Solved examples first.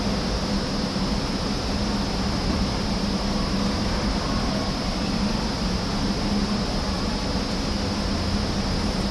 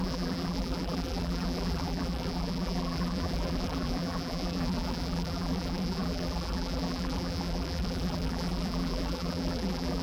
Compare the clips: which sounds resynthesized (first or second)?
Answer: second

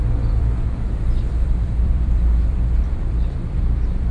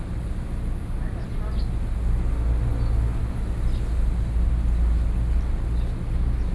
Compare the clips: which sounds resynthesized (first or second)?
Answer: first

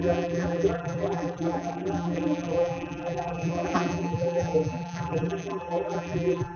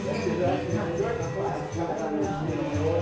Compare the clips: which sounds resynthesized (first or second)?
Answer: first